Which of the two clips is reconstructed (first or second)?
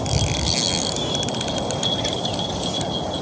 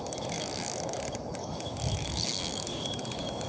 second